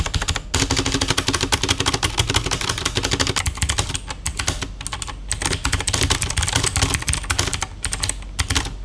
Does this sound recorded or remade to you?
recorded